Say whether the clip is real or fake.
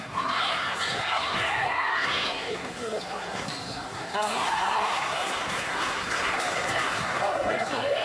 fake